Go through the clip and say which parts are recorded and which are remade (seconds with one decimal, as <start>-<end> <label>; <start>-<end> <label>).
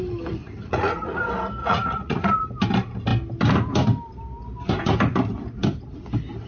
0.0-0.4 recorded; 0.4-1.2 remade; 1.2-1.6 recorded; 1.6-2.4 remade; 2.4-6.5 recorded